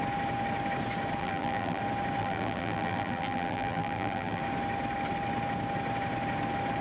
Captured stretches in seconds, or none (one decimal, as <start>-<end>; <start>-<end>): 0.0-1.2; 1.8-2.2; 4.4-6.8

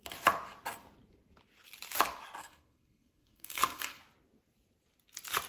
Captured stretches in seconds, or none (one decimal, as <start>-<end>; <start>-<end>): 0.0-2.4; 4.0-5.5